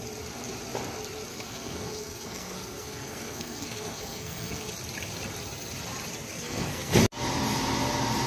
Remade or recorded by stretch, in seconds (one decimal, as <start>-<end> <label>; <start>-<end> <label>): 0.0-1.3 recorded; 1.3-4.7 remade; 4.7-6.3 recorded; 6.3-7.0 remade; 7.0-8.3 recorded